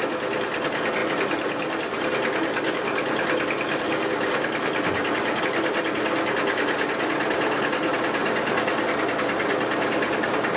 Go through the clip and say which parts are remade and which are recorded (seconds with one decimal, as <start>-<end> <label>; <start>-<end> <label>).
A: 0.0-10.6 recorded